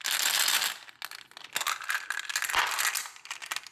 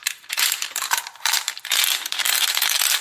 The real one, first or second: first